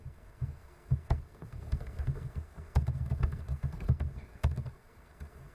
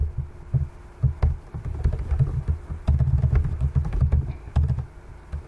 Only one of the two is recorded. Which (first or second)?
second